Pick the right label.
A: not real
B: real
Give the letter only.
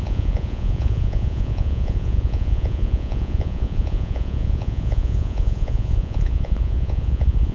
A